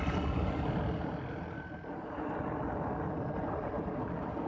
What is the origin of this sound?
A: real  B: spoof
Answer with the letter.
A